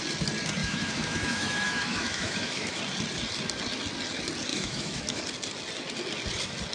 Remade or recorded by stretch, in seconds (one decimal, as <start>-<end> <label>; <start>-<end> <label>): 0.0-0.6 recorded; 0.6-2.8 remade; 2.8-4.5 recorded; 4.5-5.2 remade; 5.2-6.7 recorded